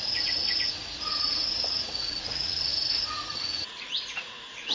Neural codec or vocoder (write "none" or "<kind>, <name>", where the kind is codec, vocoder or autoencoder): vocoder, Vocos